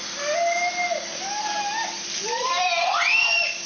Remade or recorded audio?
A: recorded